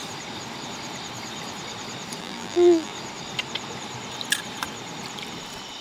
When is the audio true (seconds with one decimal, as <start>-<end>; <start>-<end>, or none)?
0.0-2.2; 2.9-5.8